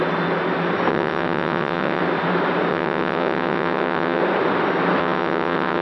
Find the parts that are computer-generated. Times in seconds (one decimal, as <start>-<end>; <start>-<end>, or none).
0.9-2.0; 2.7-4.2; 5.0-5.8